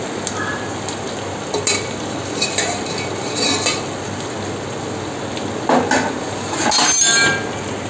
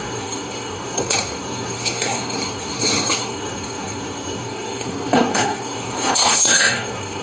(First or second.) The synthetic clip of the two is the second